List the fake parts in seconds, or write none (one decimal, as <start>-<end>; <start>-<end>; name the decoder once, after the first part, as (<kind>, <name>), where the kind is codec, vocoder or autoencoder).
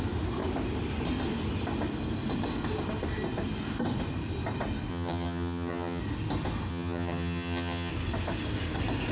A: 4.9-6.0 (vocoder, HiFi-GAN); 6.7-7.9